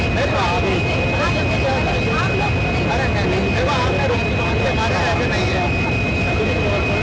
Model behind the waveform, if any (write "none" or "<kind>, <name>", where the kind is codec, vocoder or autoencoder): none